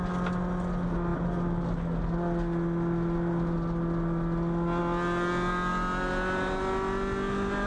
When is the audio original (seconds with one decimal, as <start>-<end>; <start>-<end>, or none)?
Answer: 0.0-7.7